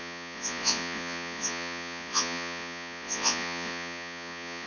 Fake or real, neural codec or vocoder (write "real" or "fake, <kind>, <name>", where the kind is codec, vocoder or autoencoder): fake, vocoder, Vocos